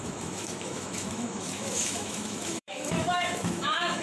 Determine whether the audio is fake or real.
fake